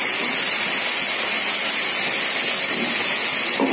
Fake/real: real